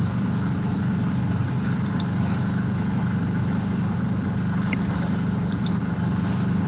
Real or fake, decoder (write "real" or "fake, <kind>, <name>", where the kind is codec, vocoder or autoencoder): real